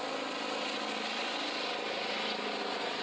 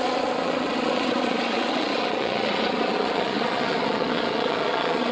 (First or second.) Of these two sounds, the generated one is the second